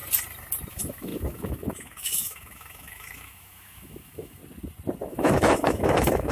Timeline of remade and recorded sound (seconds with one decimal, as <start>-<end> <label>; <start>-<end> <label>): 0.0-0.7 recorded; 0.7-4.4 remade; 4.4-5.1 recorded; 5.1-6.3 remade